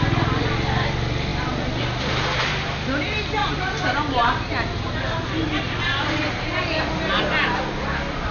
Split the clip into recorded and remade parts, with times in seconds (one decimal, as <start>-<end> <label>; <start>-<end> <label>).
0.0-8.3 recorded

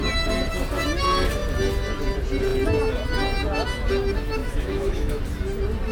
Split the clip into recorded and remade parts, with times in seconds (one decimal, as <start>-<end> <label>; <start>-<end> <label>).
0.0-4.4 recorded; 4.4-5.2 remade; 5.2-5.9 recorded

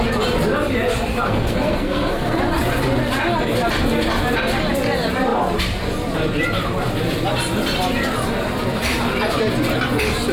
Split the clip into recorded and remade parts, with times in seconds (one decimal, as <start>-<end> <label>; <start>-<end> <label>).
0.0-1.1 recorded; 1.1-2.4 remade; 2.4-10.3 recorded

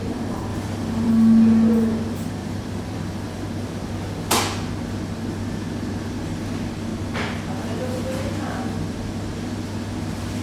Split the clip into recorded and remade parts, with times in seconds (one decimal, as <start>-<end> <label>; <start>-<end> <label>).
0.0-0.5 recorded; 0.5-1.1 remade; 1.1-2.4 recorded; 2.4-3.9 remade; 3.9-10.4 recorded

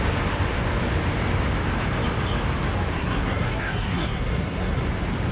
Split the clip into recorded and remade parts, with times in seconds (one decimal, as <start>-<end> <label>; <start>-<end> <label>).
0.0-3.0 recorded; 3.0-4.8 remade; 4.8-5.3 recorded

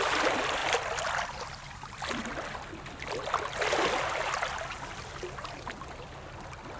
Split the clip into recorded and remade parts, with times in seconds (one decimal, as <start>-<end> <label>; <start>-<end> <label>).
0.0-6.8 recorded